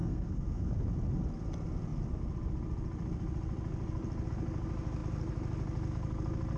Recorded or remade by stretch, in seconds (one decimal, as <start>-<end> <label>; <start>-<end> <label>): 0.0-0.7 remade; 0.7-6.6 recorded